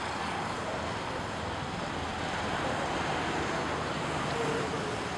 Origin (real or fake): real